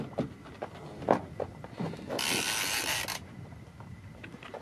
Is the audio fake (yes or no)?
no